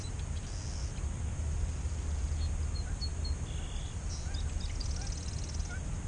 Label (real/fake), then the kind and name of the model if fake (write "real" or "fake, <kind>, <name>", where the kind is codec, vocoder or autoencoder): real